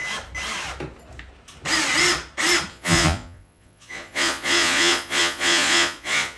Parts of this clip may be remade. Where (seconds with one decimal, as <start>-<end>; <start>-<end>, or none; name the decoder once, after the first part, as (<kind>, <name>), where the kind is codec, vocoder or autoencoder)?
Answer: 2.7-6.4 (vocoder, Vocos)